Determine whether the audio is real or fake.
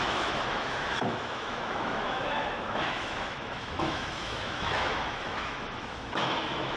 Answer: fake